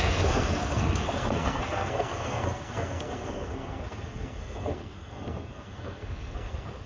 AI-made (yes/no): yes